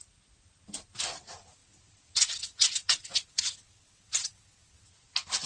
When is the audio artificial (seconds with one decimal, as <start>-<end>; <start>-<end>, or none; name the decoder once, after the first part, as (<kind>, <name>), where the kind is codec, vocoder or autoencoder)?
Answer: 1.6-4.9 (vocoder, WaveNeXt)

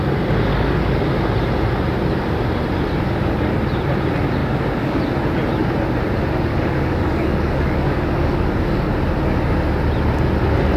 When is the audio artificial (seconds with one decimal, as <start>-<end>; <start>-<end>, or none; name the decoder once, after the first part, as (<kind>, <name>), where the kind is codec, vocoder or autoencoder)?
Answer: 0.5-1.0 (codec, DAC); 4.4-5.0; 6.5-8.9

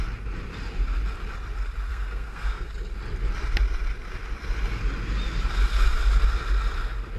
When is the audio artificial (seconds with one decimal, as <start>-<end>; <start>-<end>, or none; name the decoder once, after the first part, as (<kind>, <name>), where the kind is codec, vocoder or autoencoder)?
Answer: 1.9-2.7 (codec, SNAC)